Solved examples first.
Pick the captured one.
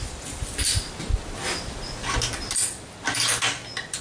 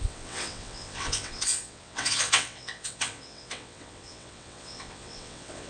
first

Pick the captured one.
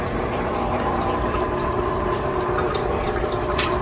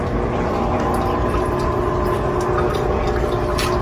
second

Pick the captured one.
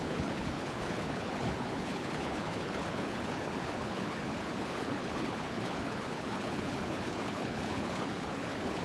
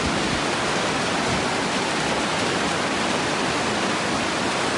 second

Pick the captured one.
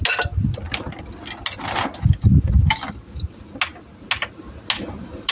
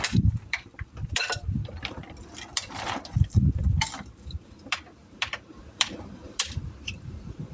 first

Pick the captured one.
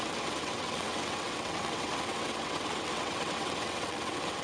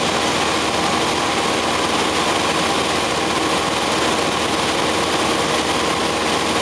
second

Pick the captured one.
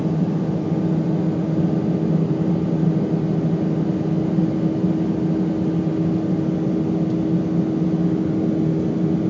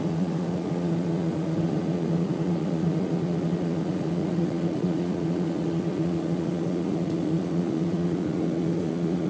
first